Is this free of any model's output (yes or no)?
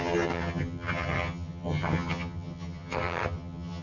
no